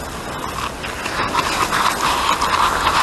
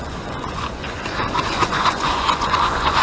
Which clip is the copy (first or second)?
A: second